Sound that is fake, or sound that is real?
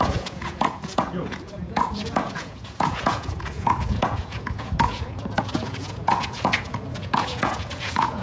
fake